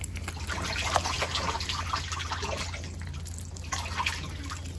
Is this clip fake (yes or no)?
no